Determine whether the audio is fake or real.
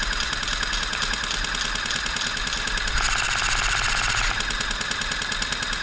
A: real